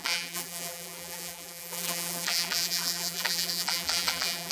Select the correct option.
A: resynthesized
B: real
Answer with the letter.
A